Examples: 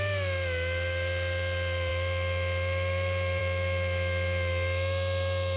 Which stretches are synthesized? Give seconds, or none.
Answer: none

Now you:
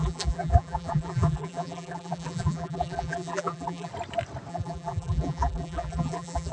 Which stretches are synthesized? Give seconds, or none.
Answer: 0.0-3.9 (vocoder, BigVGAN v2); 4.5-6.5

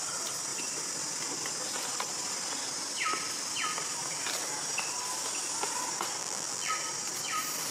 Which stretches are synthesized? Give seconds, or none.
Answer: 6.2-6.7 (vocoder, BigVGAN v2)

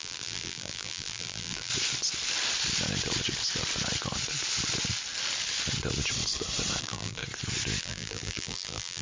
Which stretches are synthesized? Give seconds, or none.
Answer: 0.0-1.7 (vocoder, BigVGAN v2); 6.8-7.2; 7.8-9.0

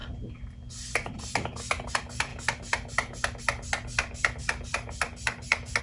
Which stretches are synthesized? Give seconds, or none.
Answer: 1.9-2.3 (vocoder, BigVGAN v2)

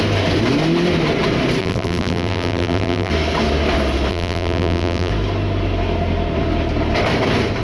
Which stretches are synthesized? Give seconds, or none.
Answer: 1.6-3.1 (vocoder, BigVGAN v2); 4.1-5.1